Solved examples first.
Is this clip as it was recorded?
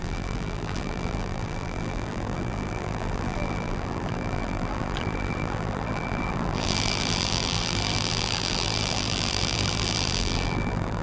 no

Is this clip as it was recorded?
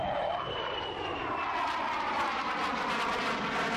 yes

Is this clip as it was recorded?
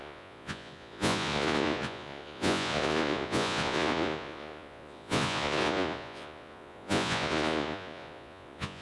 no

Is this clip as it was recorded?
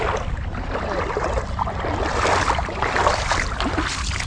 yes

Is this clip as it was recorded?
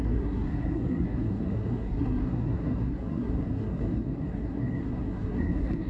no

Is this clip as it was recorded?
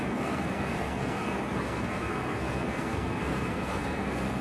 no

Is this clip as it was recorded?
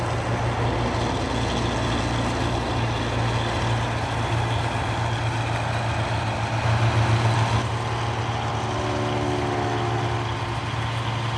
yes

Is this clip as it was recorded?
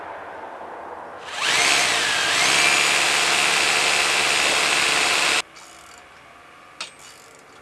yes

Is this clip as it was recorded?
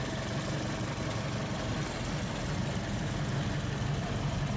yes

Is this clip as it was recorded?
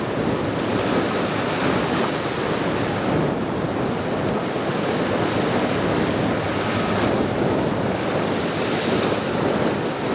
yes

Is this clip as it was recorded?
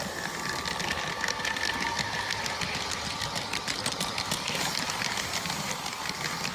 yes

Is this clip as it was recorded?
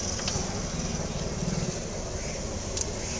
yes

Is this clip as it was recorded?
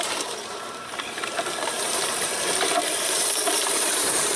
no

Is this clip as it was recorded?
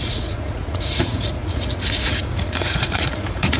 no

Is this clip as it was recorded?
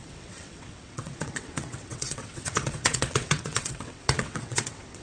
no